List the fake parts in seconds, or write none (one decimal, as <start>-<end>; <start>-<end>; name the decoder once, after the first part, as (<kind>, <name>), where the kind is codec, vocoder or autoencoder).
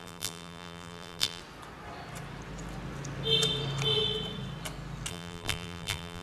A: 0.0-1.4 (vocoder, BigVGAN v2); 5.1-6.2